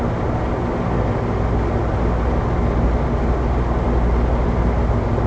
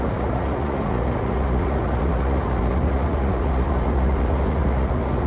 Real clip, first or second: first